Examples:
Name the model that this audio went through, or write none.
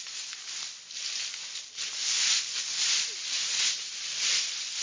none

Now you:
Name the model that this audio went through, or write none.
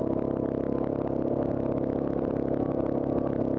none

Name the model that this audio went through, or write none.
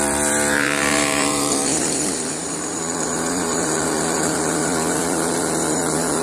vocoder, BigVGAN v2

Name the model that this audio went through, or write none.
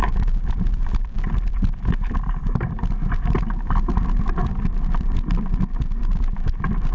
vocoder, BigVGAN v2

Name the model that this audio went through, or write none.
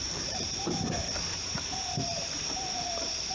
vocoder, BigVGAN v2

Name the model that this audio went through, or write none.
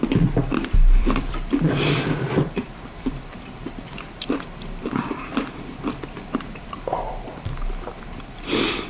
vocoder, BigVGAN v2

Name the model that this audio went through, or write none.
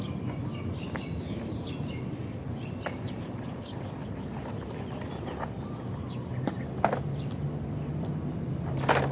none